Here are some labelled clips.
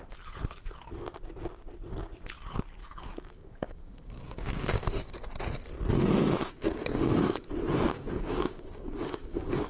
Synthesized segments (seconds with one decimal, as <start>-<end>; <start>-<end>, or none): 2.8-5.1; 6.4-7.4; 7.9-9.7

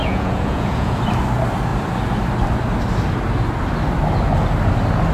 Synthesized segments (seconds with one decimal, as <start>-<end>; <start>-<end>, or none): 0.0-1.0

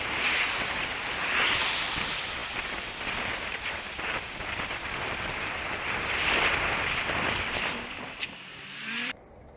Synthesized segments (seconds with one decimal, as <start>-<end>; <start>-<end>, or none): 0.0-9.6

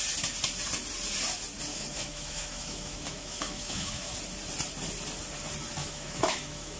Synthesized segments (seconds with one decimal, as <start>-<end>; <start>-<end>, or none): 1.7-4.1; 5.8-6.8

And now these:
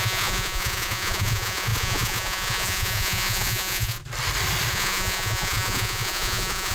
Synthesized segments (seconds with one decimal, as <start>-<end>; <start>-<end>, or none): 0.0-4.0; 4.7-6.7